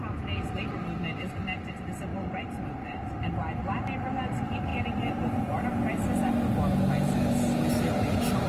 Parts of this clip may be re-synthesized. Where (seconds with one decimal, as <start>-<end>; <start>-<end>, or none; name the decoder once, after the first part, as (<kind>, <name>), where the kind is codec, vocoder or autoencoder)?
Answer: 2.1-3.0 (vocoder, BigVGAN v2)